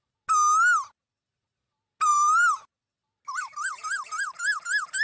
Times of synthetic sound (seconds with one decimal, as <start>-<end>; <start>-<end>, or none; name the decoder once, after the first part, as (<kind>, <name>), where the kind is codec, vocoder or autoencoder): 2.1-2.7 (vocoder, BigVGAN v2)